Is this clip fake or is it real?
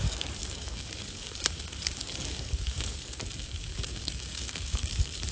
fake